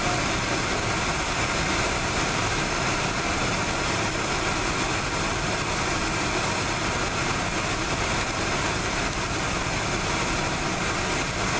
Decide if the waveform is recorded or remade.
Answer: recorded